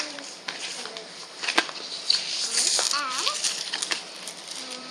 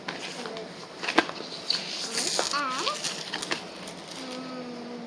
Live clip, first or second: second